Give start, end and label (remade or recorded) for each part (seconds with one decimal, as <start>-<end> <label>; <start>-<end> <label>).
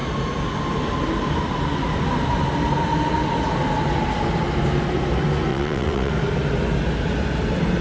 0.0-5.5 recorded; 5.5-6.1 remade; 6.1-7.8 recorded